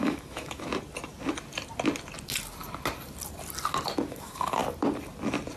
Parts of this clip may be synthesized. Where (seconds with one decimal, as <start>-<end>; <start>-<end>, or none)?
0.0-0.7; 4.1-4.6